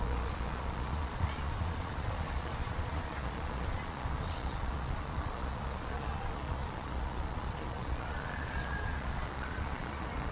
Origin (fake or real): fake